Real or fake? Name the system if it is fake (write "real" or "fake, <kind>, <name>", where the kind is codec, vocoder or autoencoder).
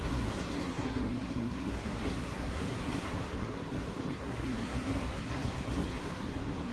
fake, codec, SNAC